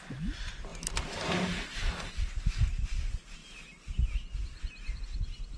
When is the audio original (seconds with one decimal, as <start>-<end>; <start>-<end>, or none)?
0.0-0.7; 2.1-3.4; 5.0-5.6